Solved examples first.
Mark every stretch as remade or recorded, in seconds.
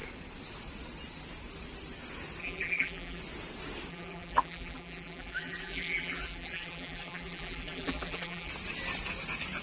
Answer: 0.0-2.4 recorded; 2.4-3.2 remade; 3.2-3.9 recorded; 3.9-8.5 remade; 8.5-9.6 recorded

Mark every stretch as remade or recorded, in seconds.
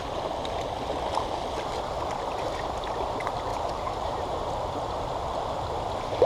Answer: 0.0-3.5 recorded; 3.5-4.4 remade; 4.4-6.3 recorded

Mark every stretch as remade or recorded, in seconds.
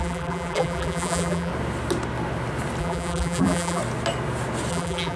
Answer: 0.0-1.5 remade; 1.5-2.8 recorded; 2.8-3.8 remade; 3.8-4.7 recorded; 4.7-5.2 remade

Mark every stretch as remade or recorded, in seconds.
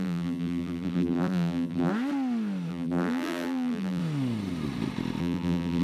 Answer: 0.0-1.9 remade; 1.9-2.7 recorded; 2.7-4.0 remade; 4.0-5.2 recorded; 5.2-5.8 remade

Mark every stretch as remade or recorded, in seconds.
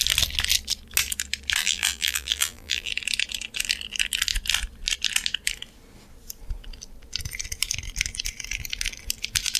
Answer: 0.0-1.6 recorded; 1.6-2.9 remade; 2.9-9.6 recorded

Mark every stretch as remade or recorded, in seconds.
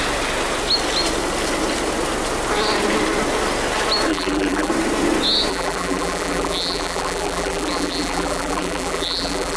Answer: 0.0-4.1 recorded; 4.1-4.7 remade; 4.7-5.5 recorded; 5.5-9.6 remade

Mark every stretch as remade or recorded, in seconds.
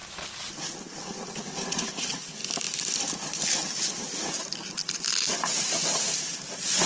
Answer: 0.0-6.9 recorded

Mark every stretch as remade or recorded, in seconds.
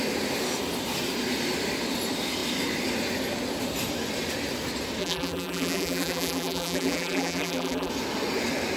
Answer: 0.0-5.0 recorded; 5.0-7.9 remade; 7.9-8.8 recorded